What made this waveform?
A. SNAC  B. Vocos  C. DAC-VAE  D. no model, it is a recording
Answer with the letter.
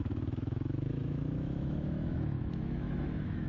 C